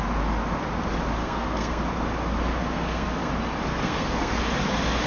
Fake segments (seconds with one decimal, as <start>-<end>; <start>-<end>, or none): 1.2-1.8; 2.6-3.3; 3.7-4.4